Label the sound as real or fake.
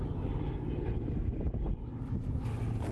real